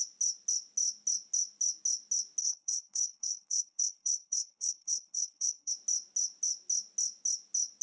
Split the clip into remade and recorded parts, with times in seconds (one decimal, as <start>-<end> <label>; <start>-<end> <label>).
0.0-2.4 recorded; 2.4-5.7 remade; 5.7-7.8 recorded